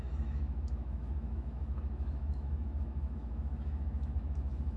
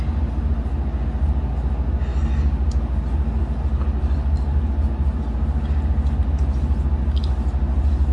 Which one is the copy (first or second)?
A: first